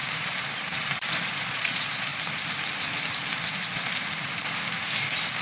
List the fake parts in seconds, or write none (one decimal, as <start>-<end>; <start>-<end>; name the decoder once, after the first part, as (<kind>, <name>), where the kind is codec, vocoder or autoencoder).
1.4-2.1 (vocoder, Vocos)